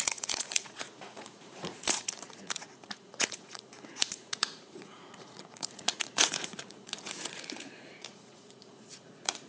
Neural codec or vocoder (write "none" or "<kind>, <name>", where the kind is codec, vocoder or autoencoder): vocoder, Vocos